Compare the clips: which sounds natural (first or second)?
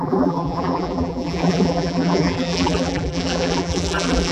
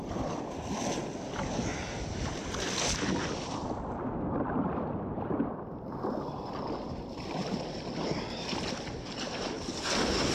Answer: second